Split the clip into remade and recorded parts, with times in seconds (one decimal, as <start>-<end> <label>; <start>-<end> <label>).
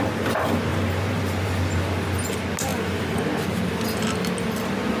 0.0-0.7 recorded; 0.7-1.5 remade; 1.5-5.0 recorded